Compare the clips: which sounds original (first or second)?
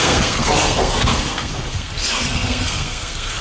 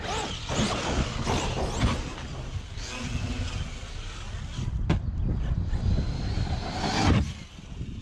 second